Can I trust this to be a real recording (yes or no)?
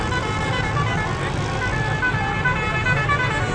yes